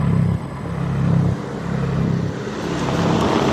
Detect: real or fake real